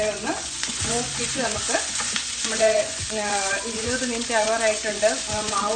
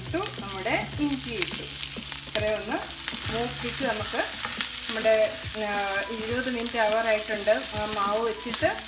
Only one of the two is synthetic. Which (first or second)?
first